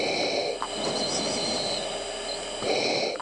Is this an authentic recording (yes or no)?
yes